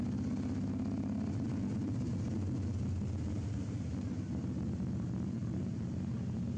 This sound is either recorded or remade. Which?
recorded